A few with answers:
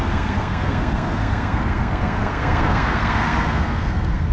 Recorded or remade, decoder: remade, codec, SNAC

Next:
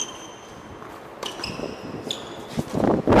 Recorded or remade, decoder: recorded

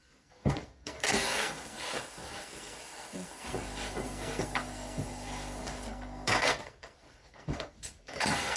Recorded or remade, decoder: remade, codec, SNAC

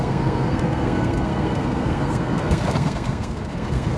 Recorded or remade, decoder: remade, codec, SNAC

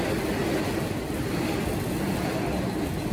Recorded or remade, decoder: recorded